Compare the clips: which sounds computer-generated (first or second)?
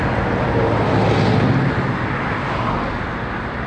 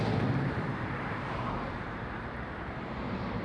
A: second